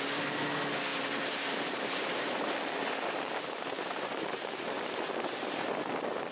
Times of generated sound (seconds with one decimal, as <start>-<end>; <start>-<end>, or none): 0.9-2.3; 2.8-4.8